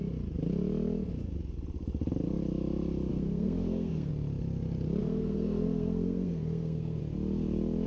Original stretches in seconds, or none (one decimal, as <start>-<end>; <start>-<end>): 0.0-3.1; 4.1-5.0; 7.0-7.9

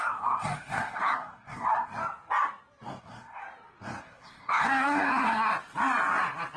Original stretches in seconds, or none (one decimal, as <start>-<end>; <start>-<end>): 1.9-3.0; 3.4-4.0; 5.5-6.6

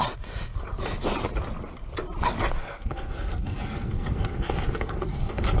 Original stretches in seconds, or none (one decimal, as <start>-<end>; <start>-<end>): 0.0-2.6

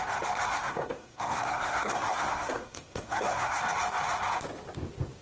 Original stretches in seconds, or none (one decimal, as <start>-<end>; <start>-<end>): 0.0-0.5; 3.6-5.2